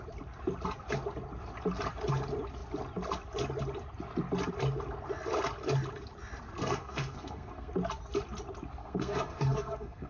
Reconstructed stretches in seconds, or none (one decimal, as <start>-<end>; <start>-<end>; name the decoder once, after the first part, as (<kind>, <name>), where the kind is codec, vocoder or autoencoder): 6.6-7.7 (codec, SNAC); 8.8-10.1